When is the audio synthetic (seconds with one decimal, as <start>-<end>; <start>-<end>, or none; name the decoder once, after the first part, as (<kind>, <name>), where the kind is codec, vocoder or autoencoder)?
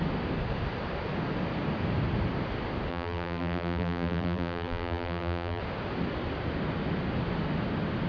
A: 2.9-5.6 (vocoder, BigVGAN v2)